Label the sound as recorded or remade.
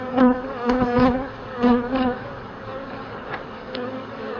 remade